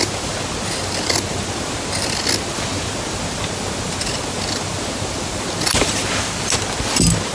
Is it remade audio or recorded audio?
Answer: recorded